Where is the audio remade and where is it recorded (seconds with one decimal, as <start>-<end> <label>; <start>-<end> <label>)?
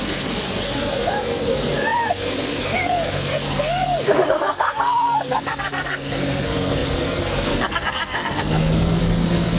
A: 0.0-9.6 remade